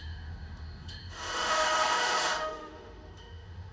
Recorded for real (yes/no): no